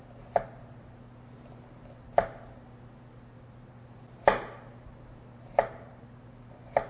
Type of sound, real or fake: real